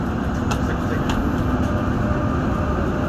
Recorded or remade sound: recorded